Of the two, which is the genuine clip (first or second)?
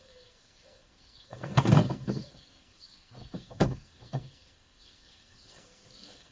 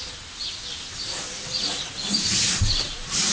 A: second